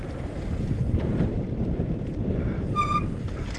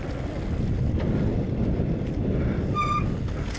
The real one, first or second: second